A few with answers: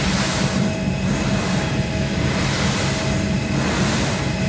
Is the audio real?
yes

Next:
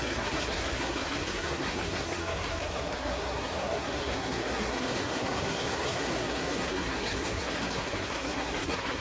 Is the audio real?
no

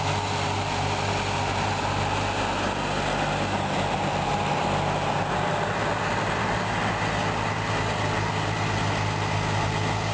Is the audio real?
yes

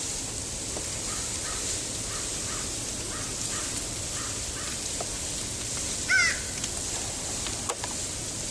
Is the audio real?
yes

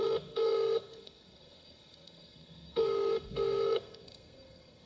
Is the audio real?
no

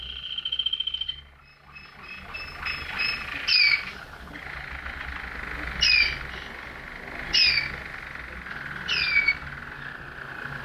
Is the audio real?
yes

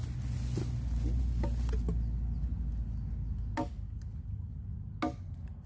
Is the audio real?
yes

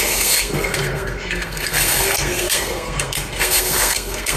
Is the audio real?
no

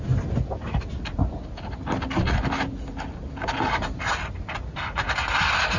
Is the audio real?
yes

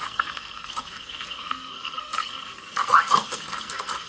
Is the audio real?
no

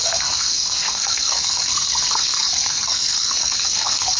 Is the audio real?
no